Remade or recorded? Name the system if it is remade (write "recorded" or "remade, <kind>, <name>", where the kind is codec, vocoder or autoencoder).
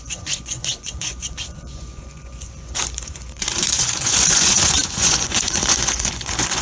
remade, vocoder, Vocos